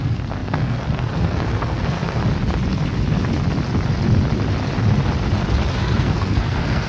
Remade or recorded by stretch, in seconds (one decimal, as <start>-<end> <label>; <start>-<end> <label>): 0.0-2.2 remade; 2.2-5.7 recorded; 5.7-6.9 remade